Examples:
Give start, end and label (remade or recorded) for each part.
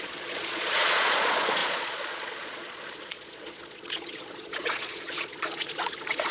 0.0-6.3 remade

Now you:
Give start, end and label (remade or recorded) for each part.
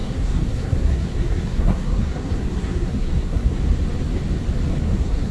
0.0-3.6 remade; 3.6-4.8 recorded; 4.8-5.3 remade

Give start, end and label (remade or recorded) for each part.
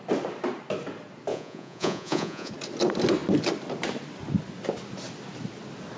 0.0-1.3 recorded; 1.3-2.5 remade; 2.5-6.0 recorded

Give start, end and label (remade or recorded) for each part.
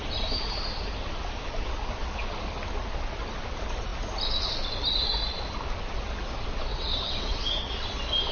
0.0-6.7 recorded; 6.7-7.7 remade; 7.7-8.3 recorded